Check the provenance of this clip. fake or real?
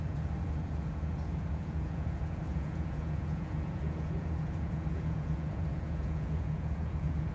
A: fake